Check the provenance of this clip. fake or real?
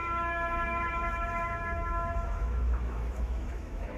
fake